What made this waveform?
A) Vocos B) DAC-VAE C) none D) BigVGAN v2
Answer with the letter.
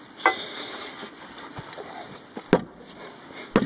C